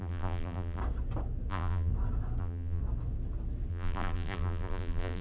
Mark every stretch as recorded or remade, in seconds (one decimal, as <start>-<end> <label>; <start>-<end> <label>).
0.0-0.8 remade; 0.8-1.5 recorded; 1.5-1.9 remade; 1.9-2.4 recorded; 2.4-2.8 remade; 2.8-3.7 recorded; 3.7-5.2 remade